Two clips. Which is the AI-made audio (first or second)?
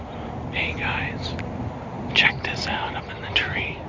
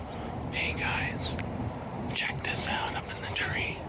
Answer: second